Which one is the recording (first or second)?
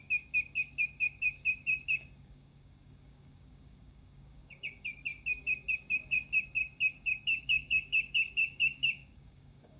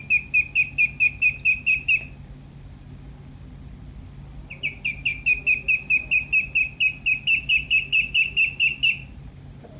second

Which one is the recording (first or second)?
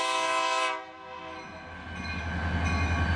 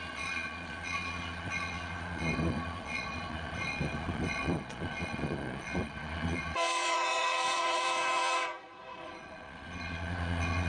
first